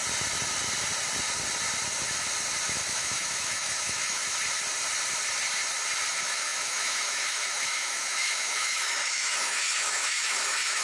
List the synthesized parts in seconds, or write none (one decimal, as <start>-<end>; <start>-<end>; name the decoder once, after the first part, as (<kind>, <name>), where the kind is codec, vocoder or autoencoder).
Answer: 2.9-4.2 (autoencoder, DAC-VAE); 6.1-10.8